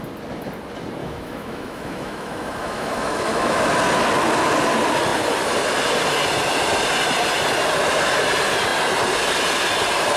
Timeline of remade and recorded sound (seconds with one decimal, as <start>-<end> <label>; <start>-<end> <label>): 0.0-1.0 recorded; 1.0-3.6 remade; 3.6-10.2 recorded